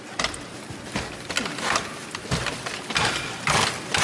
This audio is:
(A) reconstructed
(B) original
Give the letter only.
B